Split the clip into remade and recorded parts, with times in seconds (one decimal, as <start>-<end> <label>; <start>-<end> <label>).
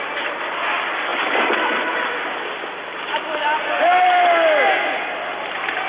0.0-5.9 recorded